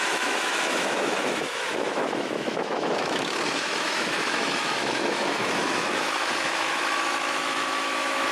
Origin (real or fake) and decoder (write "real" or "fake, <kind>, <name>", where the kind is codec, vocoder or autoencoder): fake, autoencoder, DAC-VAE